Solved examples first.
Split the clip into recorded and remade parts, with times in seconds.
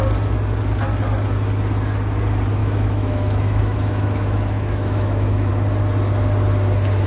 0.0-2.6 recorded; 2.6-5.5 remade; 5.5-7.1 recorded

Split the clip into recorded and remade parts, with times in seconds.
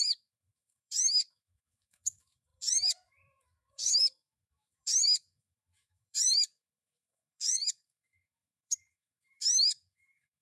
0.0-10.4 remade